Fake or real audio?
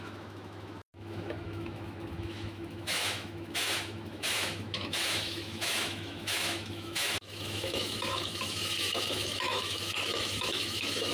fake